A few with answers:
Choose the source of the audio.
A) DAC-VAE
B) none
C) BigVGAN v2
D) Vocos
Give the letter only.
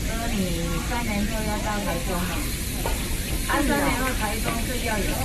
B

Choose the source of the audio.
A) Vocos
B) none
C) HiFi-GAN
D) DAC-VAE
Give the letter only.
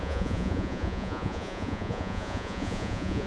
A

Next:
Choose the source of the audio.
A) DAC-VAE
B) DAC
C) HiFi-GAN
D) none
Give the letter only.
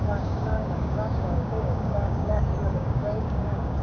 B